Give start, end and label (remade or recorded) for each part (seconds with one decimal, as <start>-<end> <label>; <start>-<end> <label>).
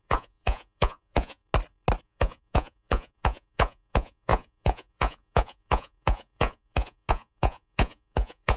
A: 0.0-1.4 remade; 1.4-2.0 recorded; 2.0-8.6 remade